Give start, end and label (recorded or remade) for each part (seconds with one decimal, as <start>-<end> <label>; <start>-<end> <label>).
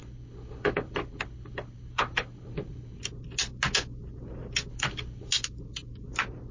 0.0-3.0 remade; 3.0-4.7 recorded; 4.7-5.3 remade; 5.3-6.5 recorded